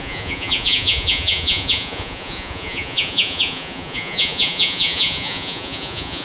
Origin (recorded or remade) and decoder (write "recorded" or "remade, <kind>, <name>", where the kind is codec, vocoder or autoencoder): remade, vocoder, Vocos